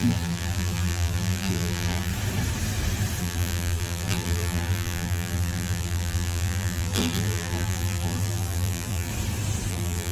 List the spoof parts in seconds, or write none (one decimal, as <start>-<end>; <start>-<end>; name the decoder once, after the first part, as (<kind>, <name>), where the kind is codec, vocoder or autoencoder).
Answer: 0.0-2.1 (vocoder, BigVGAN v2); 3.2-9.1; 9.7-10.1